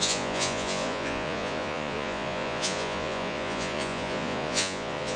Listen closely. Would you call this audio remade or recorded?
remade